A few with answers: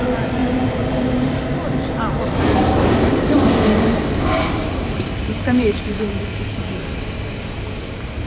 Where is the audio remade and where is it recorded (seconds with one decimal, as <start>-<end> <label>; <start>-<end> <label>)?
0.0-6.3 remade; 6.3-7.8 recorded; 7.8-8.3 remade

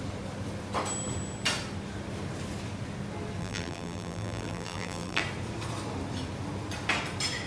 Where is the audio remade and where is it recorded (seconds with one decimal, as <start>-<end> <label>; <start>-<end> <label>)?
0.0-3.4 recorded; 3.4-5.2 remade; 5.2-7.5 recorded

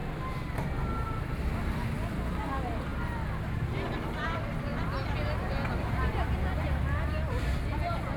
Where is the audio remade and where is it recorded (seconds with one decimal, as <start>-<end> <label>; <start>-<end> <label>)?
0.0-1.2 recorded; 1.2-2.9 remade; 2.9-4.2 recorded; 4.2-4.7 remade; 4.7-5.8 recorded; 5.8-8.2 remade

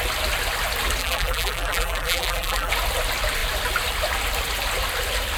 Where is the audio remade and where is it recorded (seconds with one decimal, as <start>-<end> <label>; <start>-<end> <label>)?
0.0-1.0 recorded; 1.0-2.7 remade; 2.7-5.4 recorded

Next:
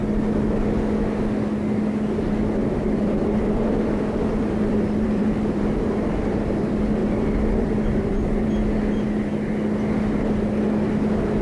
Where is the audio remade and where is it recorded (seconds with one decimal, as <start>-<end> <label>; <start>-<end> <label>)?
0.0-2.6 recorded; 2.6-5.6 remade; 5.6-7.0 recorded; 7.0-8.5 remade; 8.5-11.4 recorded

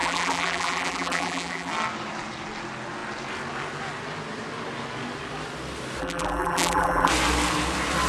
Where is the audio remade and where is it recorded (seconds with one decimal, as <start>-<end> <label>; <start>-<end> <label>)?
0.0-1.7 remade; 1.7-6.0 recorded; 6.0-7.1 remade; 7.1-8.1 recorded

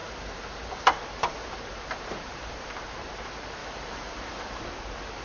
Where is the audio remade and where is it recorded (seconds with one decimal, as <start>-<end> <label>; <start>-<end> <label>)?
0.0-3.1 remade; 3.1-3.6 recorded; 3.6-4.7 remade; 4.7-5.2 recorded

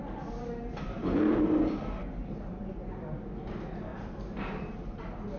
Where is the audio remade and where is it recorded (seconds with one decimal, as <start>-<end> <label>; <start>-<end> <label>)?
0.0-1.0 recorded; 1.0-2.7 remade; 2.7-3.9 recorded; 3.9-5.0 remade; 5.0-5.4 recorded